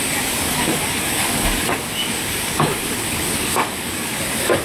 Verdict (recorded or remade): remade